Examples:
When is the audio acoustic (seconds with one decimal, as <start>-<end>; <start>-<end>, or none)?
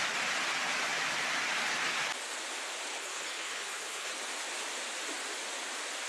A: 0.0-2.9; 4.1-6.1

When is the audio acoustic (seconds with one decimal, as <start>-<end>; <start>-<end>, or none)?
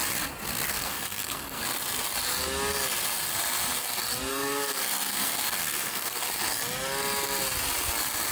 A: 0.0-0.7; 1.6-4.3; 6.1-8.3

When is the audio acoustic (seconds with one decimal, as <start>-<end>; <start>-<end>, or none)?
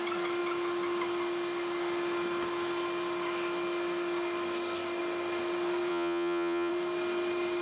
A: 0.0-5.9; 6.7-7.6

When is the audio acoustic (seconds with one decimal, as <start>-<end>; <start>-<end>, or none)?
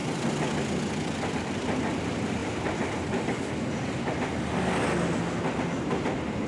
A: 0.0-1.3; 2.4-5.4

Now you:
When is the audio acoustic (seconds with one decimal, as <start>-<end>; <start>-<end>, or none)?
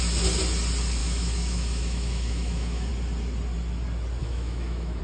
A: 0.0-1.0; 2.9-4.2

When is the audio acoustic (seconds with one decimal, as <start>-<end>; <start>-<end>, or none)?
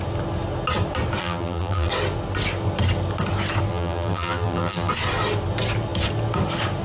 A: 0.0-1.2; 1.9-3.7; 4.9-6.8